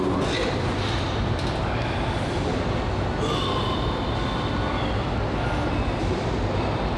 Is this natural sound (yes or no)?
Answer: yes